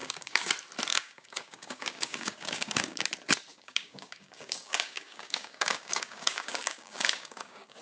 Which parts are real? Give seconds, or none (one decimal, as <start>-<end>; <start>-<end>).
0.5-0.9; 3.0-3.5